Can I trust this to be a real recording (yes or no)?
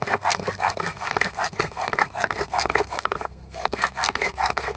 no